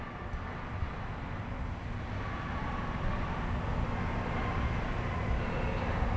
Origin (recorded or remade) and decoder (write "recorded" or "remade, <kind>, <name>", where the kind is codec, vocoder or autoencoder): recorded